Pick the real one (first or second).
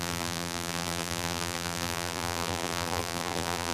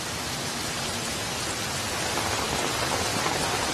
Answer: second